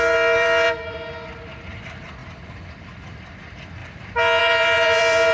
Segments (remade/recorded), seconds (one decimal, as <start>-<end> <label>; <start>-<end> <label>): 0.0-3.8 remade; 3.8-4.4 recorded; 4.4-5.3 remade